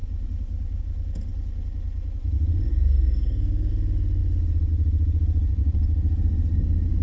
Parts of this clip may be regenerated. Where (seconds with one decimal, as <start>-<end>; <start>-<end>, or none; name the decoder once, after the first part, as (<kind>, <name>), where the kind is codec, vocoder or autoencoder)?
2.7-3.7 (codec, SNAC)